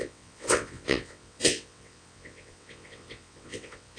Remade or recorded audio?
remade